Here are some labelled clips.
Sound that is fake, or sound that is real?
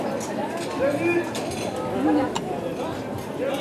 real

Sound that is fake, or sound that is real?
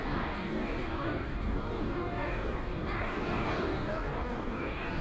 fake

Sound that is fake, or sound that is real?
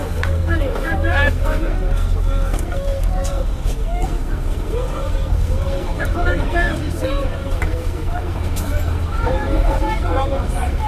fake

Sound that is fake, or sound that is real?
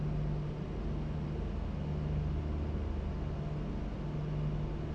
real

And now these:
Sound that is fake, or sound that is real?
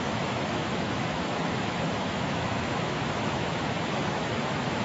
fake